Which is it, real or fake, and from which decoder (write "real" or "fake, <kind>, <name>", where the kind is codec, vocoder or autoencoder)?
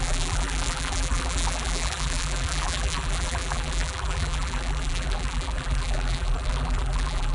fake, vocoder, BigVGAN v2